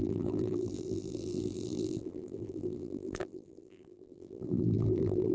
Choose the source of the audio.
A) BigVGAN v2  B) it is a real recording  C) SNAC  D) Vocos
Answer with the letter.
A